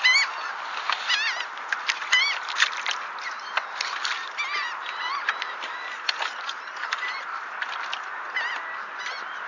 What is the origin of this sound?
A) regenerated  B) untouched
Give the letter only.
B